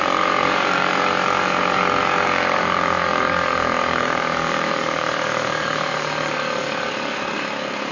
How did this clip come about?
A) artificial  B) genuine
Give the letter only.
A